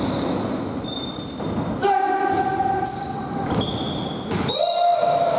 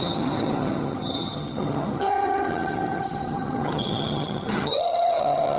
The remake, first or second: second